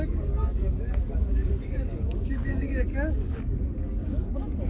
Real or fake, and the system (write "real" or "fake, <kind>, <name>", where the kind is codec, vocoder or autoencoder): fake, codec, DAC